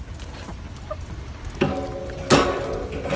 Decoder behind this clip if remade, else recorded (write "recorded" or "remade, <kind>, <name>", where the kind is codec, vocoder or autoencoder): recorded